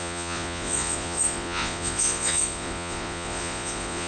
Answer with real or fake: fake